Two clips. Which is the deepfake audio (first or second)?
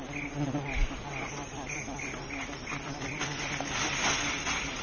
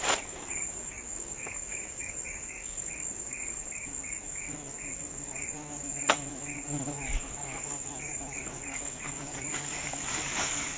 second